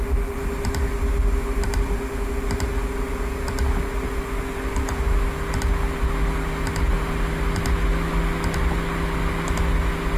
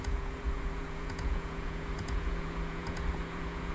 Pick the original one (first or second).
first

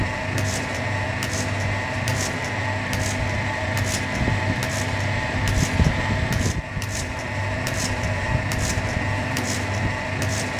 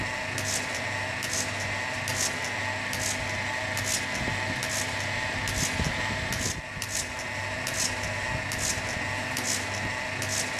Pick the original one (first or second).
second